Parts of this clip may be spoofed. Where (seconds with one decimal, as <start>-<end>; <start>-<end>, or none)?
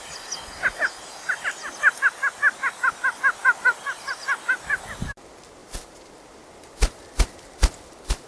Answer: 5.6-8.3